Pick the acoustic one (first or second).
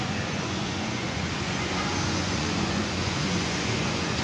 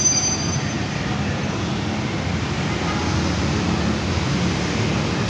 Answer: second